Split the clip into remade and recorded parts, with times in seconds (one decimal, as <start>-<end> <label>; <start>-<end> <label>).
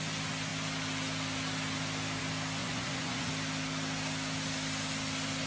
0.0-2.6 recorded; 2.6-3.3 remade; 3.3-5.5 recorded